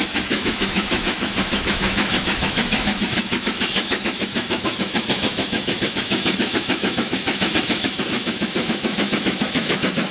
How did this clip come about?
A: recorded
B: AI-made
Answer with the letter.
B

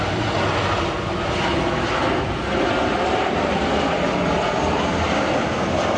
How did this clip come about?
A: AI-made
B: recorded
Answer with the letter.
B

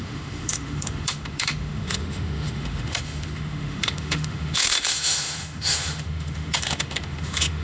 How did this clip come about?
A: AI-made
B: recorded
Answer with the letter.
A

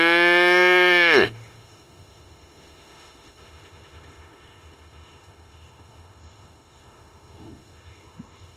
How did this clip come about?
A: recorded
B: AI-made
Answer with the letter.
B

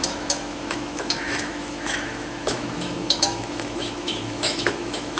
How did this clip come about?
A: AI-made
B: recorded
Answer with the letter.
A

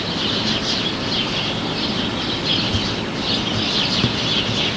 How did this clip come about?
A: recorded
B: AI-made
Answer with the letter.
A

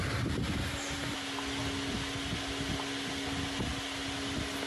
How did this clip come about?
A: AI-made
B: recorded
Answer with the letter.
B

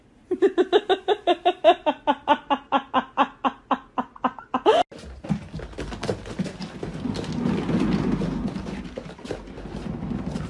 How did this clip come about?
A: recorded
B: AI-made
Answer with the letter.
A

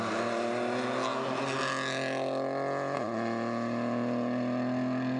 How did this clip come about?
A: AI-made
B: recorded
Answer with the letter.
B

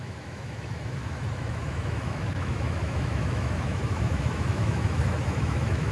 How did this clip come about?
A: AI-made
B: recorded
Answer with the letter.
A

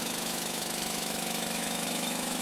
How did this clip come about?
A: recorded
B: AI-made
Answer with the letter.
B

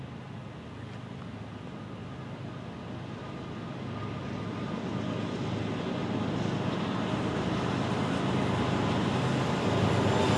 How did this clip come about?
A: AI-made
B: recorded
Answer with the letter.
B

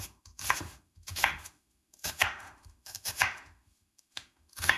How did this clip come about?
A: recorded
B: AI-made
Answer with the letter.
B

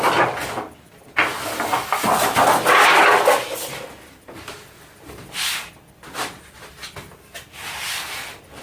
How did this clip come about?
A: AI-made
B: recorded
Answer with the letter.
B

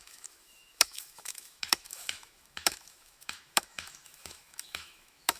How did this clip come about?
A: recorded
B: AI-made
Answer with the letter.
B